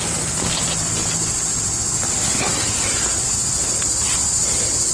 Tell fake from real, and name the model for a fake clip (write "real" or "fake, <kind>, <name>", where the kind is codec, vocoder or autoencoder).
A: real